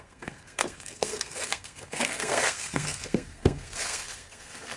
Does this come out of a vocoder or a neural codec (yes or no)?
yes